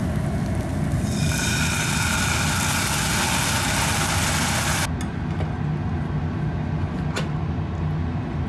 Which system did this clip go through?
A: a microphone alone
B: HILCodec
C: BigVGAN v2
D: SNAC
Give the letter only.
A